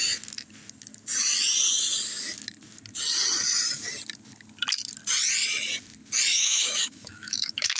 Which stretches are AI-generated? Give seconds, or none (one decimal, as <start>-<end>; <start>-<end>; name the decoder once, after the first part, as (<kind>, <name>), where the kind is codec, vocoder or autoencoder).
6.3-7.8 (autoencoder, DAC-VAE)